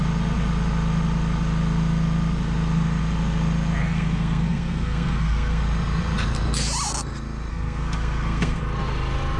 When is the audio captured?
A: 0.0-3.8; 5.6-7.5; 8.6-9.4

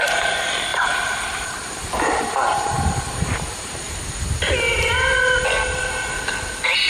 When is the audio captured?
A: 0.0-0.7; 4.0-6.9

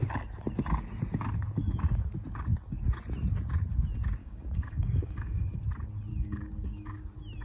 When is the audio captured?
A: 0.0-4.2; 5.6-6.1; 7.0-7.4